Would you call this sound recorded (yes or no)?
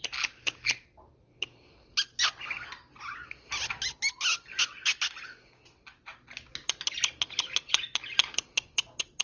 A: yes